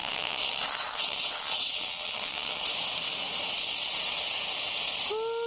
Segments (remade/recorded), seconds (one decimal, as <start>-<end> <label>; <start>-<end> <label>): 0.0-2.7 remade; 2.7-5.5 recorded

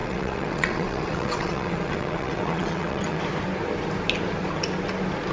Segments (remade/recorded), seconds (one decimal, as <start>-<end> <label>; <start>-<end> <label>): 0.0-3.2 remade; 3.2-5.3 recorded

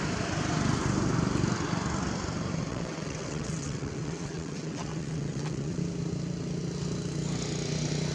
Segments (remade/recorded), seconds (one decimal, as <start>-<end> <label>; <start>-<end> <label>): 0.0-2.7 recorded; 2.7-5.8 remade; 5.8-8.1 recorded

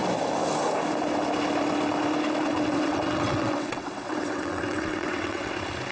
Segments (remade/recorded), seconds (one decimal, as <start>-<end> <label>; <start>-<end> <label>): 0.0-2.5 recorded; 2.5-5.5 remade; 5.5-5.9 recorded

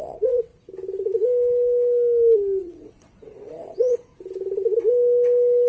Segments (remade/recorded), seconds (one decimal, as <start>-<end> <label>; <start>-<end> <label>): 0.0-0.5 remade; 0.5-2.6 recorded; 2.6-4.1 remade; 4.1-5.7 recorded

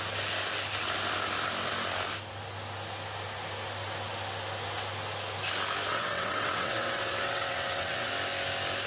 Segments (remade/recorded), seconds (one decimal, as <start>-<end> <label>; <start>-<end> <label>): 0.0-5.9 recorded; 5.9-8.1 remade; 8.1-8.9 recorded